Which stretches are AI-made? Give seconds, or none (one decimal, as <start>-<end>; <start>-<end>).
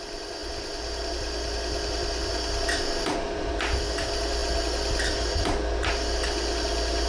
none